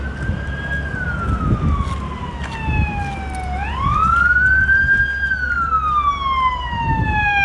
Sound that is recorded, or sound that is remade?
recorded